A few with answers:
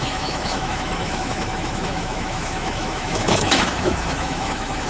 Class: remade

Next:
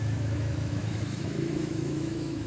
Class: remade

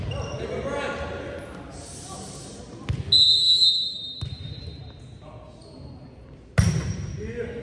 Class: recorded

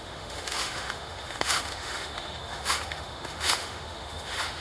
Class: remade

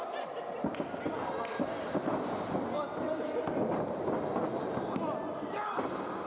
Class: recorded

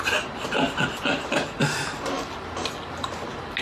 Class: recorded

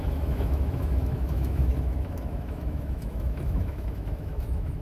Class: remade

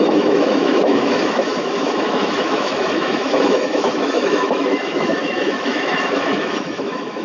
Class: remade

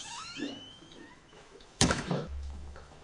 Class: remade